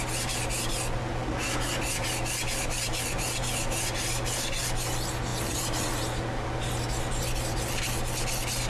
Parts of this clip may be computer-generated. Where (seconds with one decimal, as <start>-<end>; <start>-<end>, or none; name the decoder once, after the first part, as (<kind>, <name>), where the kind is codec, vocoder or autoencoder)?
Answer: none